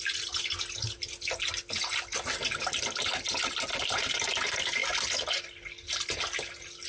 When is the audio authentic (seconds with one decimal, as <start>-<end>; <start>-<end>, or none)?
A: 0.0-6.9